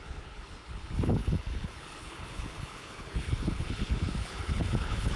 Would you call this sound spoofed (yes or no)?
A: yes